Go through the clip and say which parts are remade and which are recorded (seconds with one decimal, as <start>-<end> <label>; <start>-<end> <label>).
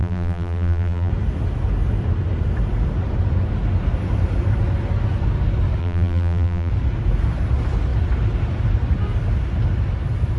0.0-1.1 remade; 1.1-5.8 recorded; 5.8-6.7 remade; 6.7-10.4 recorded